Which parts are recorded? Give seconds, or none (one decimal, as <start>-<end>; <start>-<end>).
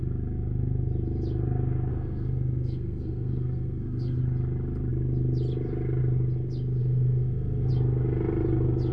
0.0-1.9; 4.2-6.8; 7.7-8.9